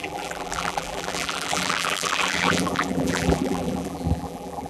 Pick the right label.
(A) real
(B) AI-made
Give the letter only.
B